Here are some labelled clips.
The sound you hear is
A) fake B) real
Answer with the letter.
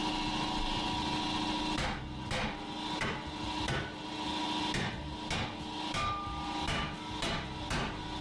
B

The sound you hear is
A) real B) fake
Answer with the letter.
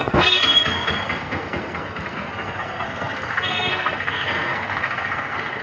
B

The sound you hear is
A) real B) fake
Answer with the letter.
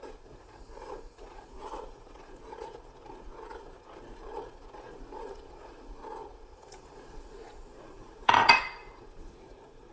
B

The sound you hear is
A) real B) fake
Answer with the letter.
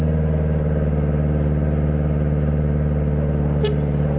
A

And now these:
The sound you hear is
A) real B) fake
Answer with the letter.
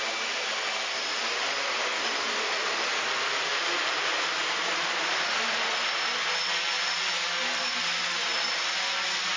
A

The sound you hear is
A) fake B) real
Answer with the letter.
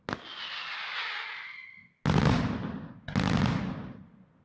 B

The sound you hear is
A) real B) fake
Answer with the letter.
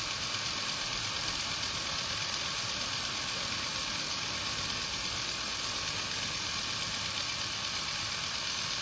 A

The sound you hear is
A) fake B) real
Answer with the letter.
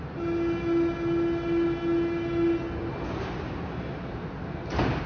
B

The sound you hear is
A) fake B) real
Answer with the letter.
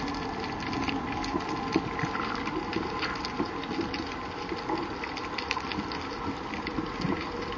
B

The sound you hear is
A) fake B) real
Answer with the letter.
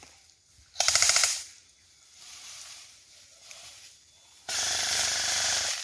B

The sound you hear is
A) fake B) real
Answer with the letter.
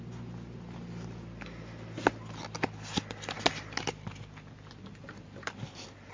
B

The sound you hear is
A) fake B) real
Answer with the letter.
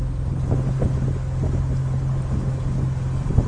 B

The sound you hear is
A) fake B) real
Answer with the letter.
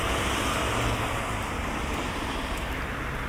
A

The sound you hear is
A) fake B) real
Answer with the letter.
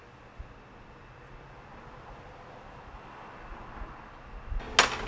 B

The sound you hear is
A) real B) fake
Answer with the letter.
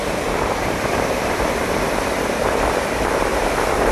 B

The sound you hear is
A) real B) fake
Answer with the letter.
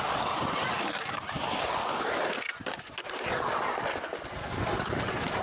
A